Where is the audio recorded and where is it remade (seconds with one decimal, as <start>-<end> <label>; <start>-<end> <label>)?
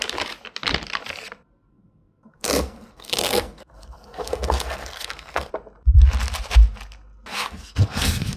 0.0-1.7 recorded; 1.7-5.5 remade; 5.5-7.3 recorded; 7.3-8.4 remade